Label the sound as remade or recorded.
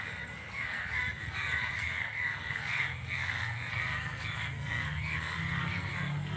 remade